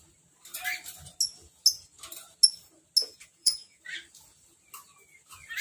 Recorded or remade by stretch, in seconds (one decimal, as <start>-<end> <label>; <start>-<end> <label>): 0.0-3.0 recorded; 3.0-3.8 remade; 3.8-5.6 recorded